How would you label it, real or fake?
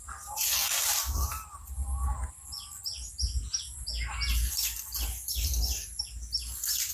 real